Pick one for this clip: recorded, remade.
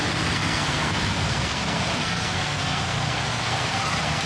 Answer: remade